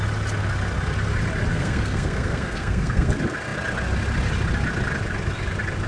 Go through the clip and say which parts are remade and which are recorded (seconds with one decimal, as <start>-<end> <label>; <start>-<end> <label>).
0.0-1.5 recorded; 1.5-3.1 remade; 3.1-5.9 recorded